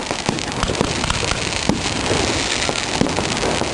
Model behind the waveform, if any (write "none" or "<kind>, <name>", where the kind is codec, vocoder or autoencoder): none